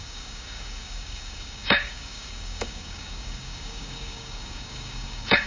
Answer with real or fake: fake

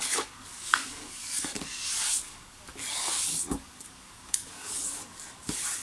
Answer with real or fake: fake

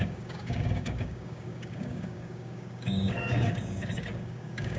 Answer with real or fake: fake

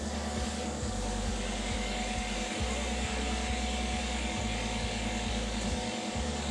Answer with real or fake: fake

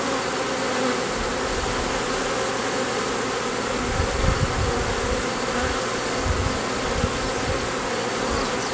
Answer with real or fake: real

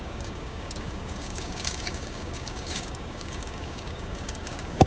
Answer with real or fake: fake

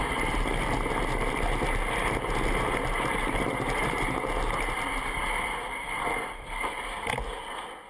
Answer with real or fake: real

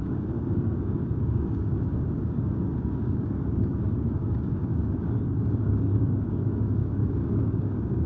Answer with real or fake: fake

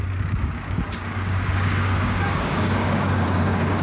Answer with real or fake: fake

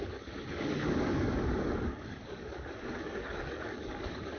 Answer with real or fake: fake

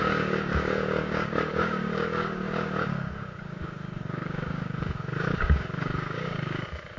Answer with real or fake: fake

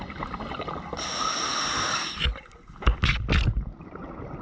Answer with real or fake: real